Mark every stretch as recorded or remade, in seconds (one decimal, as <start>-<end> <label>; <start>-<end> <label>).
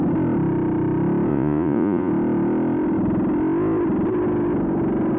0.0-1.3 recorded; 1.3-2.1 remade; 2.1-5.2 recorded